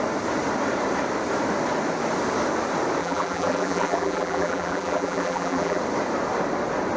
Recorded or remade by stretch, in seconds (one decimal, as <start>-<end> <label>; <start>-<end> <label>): 0.0-3.0 recorded; 3.0-5.8 remade; 5.8-7.0 recorded